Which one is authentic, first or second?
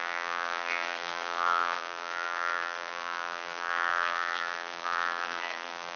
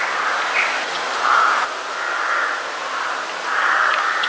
second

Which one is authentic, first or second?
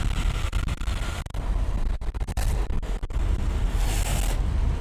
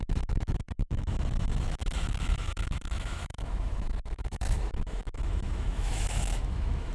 first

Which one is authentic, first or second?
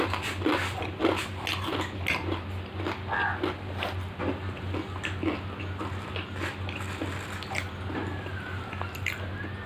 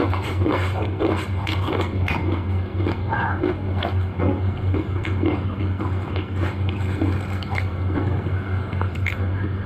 first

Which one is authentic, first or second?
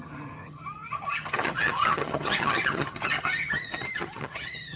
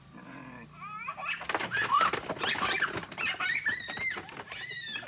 second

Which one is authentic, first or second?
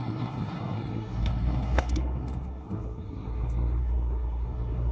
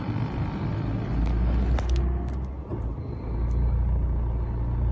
second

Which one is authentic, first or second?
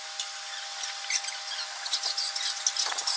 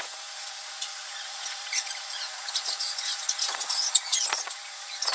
first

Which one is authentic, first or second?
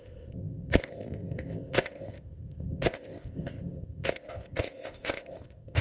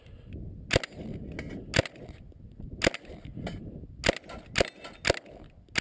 second